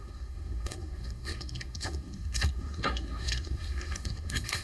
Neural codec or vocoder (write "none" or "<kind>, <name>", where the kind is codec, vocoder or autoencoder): codec, SNAC